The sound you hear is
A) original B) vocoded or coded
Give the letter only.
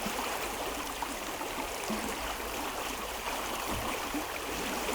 A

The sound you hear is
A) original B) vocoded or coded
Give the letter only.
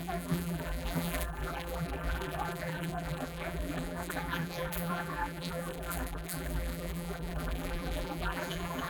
B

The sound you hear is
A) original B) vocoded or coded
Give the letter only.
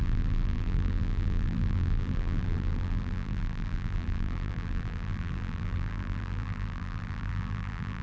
B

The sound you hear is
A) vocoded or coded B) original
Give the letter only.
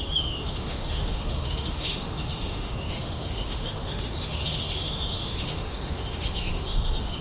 A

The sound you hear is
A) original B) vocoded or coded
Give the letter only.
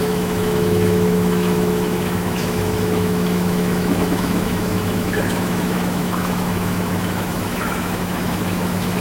B